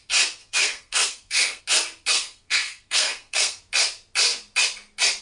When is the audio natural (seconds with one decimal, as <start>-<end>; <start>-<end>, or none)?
0.0-0.4; 1.6-2.1; 3.6-5.2